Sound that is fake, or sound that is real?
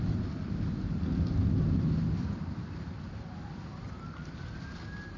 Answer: real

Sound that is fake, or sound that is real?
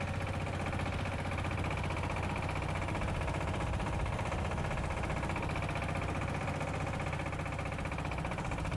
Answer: real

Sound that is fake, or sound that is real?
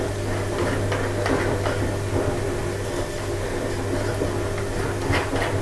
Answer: real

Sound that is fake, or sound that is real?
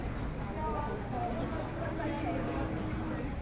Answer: real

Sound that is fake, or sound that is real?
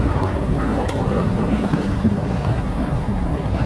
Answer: fake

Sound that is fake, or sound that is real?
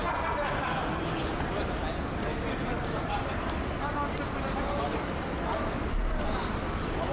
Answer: real